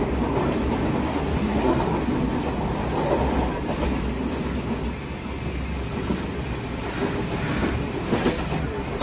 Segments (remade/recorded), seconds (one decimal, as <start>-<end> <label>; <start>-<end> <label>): 0.0-1.1 recorded; 1.1-1.8 remade; 1.8-9.0 recorded